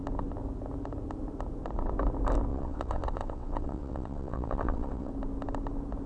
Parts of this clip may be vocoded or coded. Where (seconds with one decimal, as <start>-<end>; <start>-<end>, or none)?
2.5-5.1